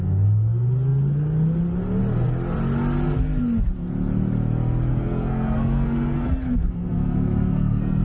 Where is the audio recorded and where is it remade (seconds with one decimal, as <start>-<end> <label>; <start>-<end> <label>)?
0.0-4.9 recorded; 4.9-8.0 remade